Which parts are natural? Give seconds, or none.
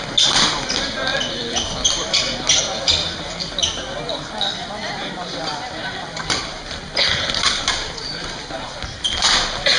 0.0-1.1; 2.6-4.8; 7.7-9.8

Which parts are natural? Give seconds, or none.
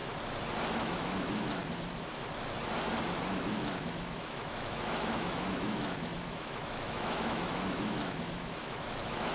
0.0-0.7; 1.6-3.3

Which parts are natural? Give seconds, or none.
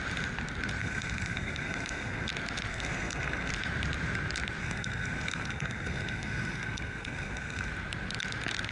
0.0-0.8; 2.3-2.7; 3.5-4.6; 7.7-8.7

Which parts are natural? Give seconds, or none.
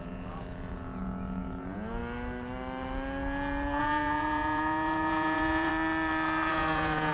2.0-3.8; 5.7-6.5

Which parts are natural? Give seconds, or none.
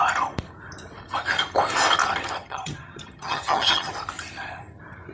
0.0-2.4; 3.9-5.1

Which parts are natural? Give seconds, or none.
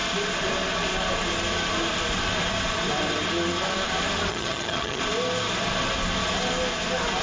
0.0-4.3; 5.0-7.2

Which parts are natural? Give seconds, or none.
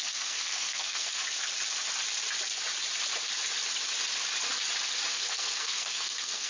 1.2-5.1